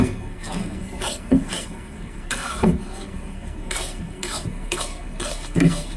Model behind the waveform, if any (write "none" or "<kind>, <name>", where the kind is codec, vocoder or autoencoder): codec, SNAC